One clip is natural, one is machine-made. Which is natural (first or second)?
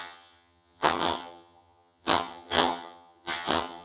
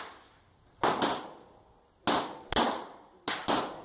second